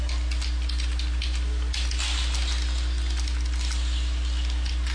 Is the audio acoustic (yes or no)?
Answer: yes